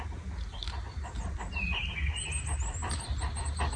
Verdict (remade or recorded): recorded